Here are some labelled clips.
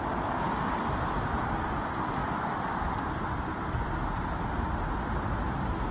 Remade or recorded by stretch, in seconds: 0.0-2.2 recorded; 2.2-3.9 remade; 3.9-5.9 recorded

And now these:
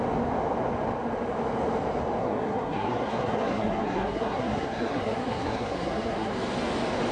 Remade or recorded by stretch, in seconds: 0.0-2.2 recorded; 2.2-6.3 remade; 6.3-7.1 recorded